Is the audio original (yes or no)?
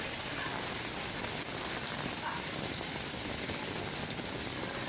yes